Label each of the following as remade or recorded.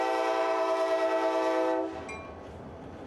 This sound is recorded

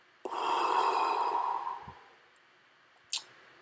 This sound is recorded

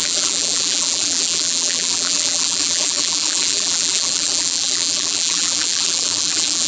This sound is remade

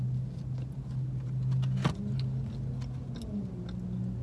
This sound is recorded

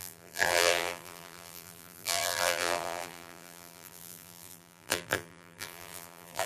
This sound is remade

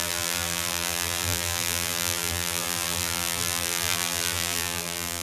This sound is remade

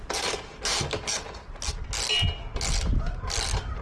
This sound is recorded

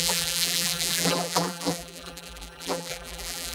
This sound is remade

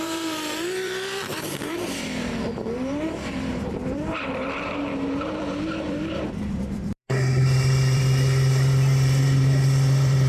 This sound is remade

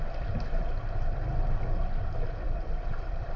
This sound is recorded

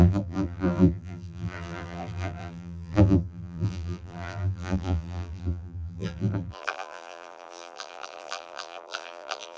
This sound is remade